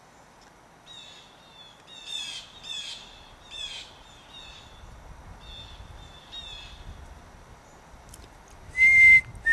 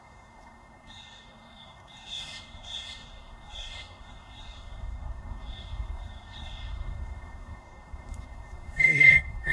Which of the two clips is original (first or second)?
first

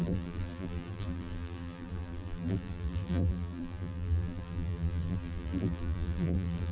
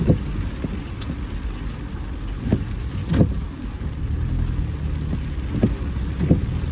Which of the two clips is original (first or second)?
second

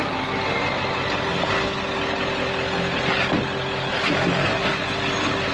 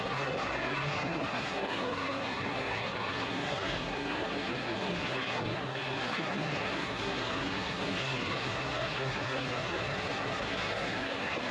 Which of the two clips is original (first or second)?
first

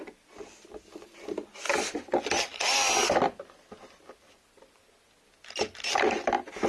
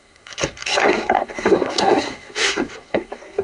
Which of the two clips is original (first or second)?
first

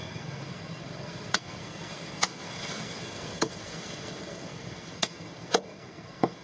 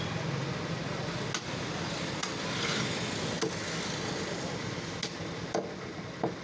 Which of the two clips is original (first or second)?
second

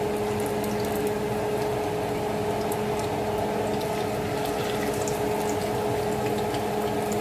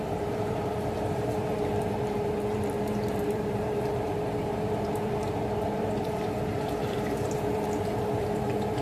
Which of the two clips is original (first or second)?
first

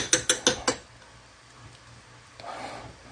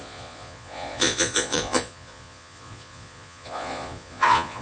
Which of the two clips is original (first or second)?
first